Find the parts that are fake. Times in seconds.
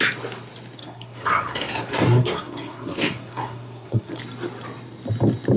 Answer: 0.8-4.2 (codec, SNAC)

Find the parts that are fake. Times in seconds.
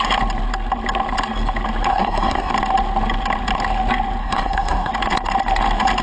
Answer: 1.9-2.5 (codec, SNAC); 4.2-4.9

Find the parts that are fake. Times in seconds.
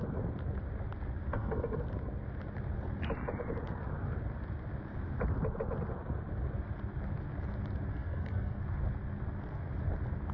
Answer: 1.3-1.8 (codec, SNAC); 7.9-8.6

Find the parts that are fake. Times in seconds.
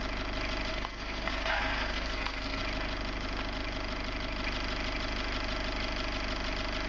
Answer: 0.7-2.6 (codec, SNAC)